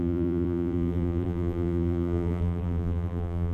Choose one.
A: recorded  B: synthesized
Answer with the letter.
B